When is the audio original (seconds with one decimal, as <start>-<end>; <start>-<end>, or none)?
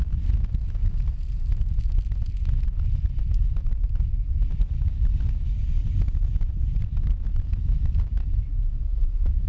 0.0-6.7; 7.6-9.5